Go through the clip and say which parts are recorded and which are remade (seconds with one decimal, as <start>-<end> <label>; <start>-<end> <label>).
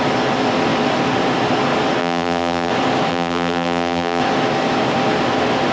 0.0-2.0 recorded; 2.0-2.7 remade; 2.7-3.1 recorded; 3.1-4.2 remade; 4.2-5.7 recorded